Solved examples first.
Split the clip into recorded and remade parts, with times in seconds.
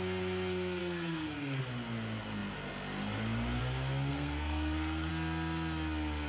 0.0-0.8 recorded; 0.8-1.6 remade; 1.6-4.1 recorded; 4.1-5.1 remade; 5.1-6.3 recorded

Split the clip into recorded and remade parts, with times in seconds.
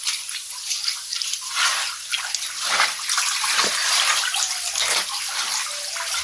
0.0-6.2 recorded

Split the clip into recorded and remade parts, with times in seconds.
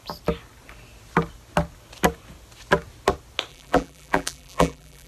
0.0-3.5 recorded; 3.5-5.1 remade